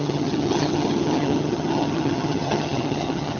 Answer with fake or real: fake